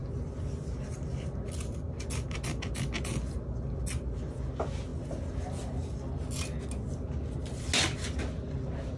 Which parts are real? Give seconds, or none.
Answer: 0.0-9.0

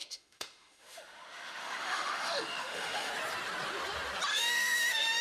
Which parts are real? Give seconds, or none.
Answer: 3.1-4.3